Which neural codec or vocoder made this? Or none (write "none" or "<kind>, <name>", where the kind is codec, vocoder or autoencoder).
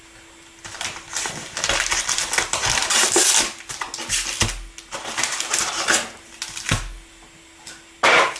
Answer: none